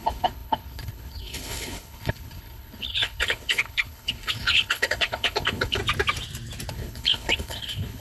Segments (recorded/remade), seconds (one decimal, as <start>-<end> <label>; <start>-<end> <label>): 0.0-5.8 remade; 5.8-6.7 recorded; 6.7-8.0 remade